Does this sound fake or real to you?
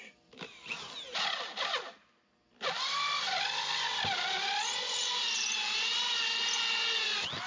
real